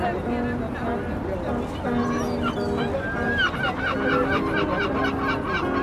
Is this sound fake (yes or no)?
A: no